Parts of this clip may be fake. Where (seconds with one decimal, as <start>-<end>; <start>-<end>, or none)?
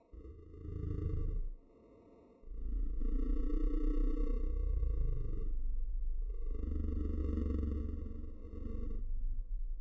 0.0-7.2; 9.0-9.8